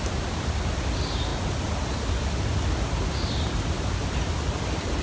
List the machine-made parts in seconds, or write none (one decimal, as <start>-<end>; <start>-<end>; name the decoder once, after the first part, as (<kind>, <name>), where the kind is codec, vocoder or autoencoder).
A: none